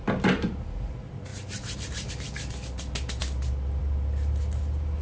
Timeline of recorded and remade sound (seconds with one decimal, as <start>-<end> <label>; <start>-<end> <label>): 0.0-1.3 recorded; 1.3-2.1 remade; 2.1-5.0 recorded